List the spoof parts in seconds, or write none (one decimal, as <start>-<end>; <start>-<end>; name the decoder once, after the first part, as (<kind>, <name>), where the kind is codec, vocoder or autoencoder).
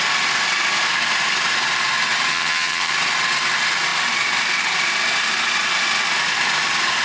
2.3-2.9 (vocoder, HiFi-GAN)